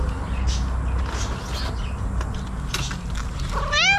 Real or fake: real